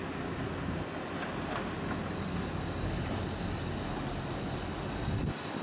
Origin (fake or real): real